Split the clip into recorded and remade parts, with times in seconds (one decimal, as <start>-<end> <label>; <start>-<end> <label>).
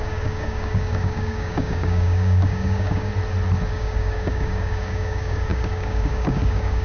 0.0-3.1 remade; 3.1-3.7 recorded; 3.7-6.8 remade